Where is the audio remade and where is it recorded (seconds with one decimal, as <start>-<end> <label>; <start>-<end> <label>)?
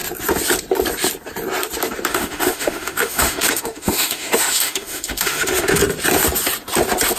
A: 0.0-2.1 recorded; 2.1-5.8 remade; 5.8-7.2 recorded